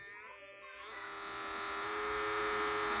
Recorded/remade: recorded